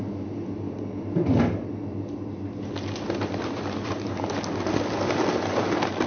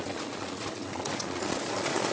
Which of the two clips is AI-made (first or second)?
second